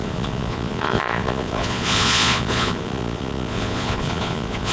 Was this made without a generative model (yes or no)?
no